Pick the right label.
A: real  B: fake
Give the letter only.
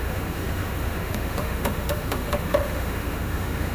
B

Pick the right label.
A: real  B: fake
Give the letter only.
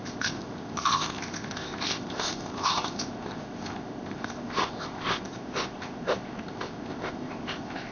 B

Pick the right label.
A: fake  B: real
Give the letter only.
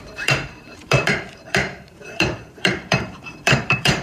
A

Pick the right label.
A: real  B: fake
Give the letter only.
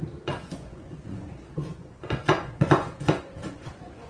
B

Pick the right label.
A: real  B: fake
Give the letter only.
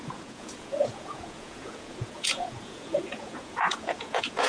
B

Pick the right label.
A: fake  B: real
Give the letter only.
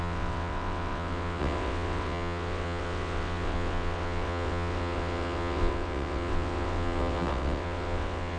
A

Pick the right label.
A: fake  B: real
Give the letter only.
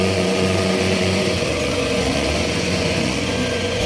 A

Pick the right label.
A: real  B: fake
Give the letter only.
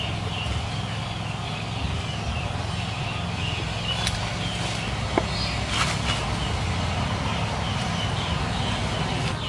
A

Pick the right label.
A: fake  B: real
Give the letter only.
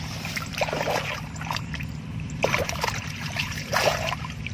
A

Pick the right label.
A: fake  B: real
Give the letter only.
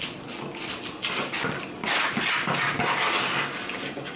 B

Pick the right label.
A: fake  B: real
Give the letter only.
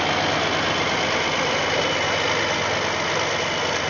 B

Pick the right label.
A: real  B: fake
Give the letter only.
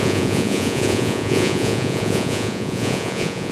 B